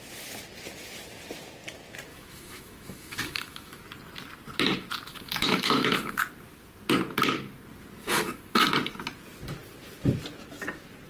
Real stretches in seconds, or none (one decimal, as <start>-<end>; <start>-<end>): 0.0-2.1; 3.8-5.1; 6.2-8.0; 8.7-11.1